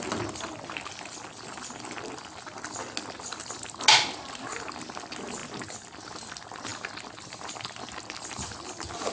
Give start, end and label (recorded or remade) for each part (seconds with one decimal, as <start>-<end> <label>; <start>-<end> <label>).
0.0-9.1 recorded